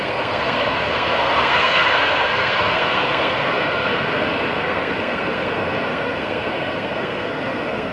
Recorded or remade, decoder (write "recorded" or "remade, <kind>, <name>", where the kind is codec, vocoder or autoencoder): remade, codec, SNAC